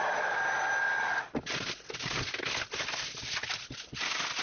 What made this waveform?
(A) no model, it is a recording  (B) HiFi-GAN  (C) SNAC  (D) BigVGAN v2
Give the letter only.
A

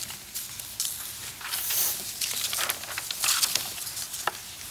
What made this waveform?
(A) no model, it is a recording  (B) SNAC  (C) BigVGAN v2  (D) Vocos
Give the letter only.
A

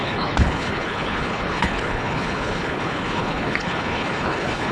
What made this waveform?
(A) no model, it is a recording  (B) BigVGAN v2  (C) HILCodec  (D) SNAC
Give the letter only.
C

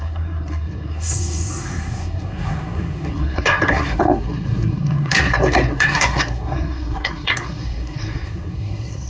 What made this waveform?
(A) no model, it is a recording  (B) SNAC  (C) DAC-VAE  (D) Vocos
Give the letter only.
B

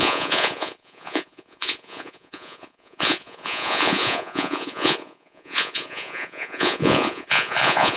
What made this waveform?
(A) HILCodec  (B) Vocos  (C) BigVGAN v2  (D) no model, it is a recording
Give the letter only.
B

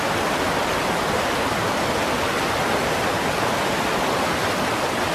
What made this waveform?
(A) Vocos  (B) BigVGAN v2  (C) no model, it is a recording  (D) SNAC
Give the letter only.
C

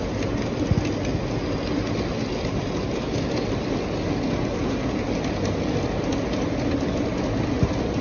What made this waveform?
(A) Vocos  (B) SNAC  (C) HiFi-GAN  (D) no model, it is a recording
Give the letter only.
D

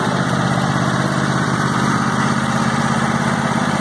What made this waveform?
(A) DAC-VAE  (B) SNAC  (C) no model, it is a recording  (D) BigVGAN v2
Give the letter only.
D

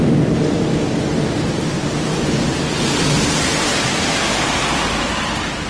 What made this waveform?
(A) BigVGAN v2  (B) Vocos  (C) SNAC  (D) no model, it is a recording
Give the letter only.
D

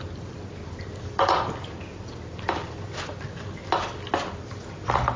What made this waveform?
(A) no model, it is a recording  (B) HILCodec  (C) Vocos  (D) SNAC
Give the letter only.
A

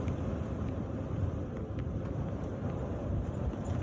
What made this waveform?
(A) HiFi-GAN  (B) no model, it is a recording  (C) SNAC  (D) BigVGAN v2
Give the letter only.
B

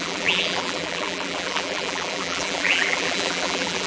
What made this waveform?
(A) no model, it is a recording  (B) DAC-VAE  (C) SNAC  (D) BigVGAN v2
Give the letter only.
D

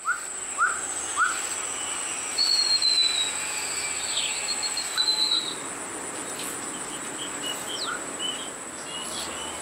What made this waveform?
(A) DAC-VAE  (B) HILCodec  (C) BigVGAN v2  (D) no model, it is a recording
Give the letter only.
D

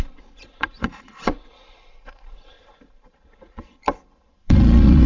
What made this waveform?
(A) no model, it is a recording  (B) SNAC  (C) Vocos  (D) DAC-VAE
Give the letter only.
C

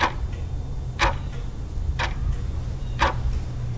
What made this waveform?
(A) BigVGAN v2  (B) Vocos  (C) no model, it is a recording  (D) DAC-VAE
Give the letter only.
C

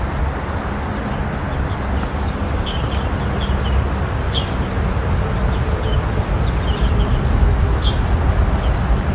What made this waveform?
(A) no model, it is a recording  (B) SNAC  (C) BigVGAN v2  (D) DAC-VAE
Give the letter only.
A